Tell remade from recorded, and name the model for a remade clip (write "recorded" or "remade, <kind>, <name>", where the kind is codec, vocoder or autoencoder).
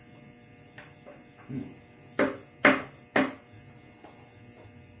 recorded